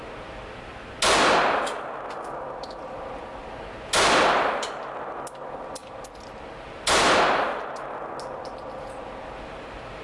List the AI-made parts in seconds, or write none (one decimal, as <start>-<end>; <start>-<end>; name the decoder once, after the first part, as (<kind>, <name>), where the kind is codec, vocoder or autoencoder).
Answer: none